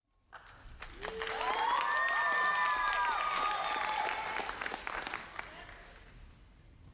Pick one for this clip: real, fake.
real